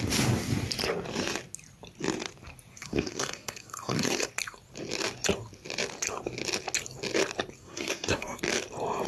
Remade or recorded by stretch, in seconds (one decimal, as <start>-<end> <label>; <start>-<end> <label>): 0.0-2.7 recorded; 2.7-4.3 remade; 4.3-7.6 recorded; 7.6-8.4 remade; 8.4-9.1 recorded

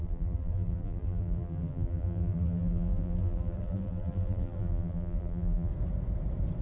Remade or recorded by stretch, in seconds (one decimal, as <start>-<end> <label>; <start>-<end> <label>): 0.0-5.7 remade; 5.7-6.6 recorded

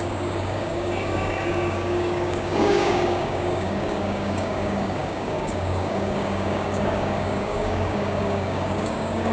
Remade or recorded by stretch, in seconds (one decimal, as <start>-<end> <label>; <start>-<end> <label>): 0.0-9.3 remade